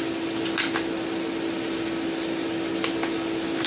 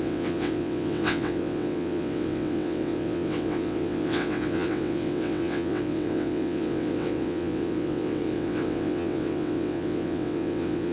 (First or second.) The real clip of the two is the first